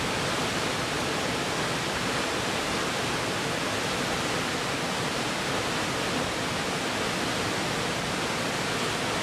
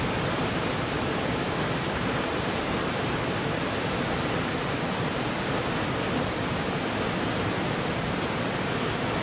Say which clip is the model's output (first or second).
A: second